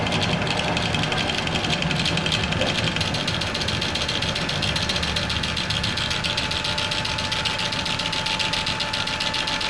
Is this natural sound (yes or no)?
yes